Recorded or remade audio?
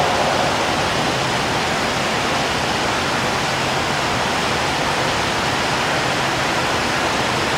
recorded